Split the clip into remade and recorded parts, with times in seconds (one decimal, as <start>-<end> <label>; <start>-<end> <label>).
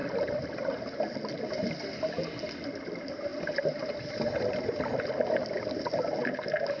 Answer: 0.0-6.8 recorded